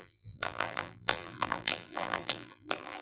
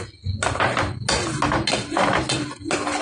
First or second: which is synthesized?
first